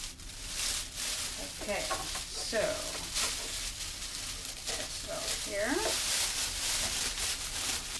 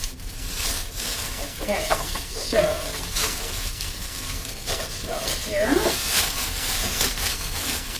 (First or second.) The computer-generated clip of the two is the second